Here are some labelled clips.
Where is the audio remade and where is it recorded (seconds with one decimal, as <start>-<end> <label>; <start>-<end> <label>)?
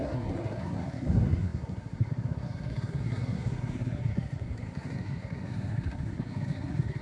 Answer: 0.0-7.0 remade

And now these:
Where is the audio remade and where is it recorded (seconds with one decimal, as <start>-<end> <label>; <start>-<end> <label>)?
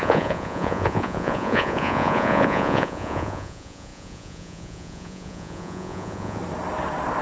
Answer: 0.0-6.4 remade; 6.4-7.2 recorded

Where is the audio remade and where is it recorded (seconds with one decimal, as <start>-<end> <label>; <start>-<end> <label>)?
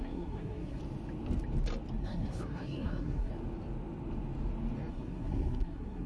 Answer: 0.0-0.8 remade; 0.8-2.0 recorded; 2.0-3.3 remade; 3.3-4.9 recorded; 4.9-6.1 remade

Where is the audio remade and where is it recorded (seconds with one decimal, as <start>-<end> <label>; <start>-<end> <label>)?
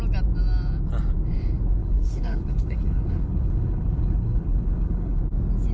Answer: 0.0-1.8 recorded; 1.8-5.2 remade; 5.2-5.7 recorded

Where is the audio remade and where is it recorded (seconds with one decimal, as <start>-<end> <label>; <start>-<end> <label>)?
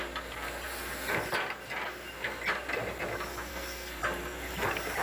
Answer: 0.0-3.5 recorded; 3.5-4.0 remade; 4.0-5.0 recorded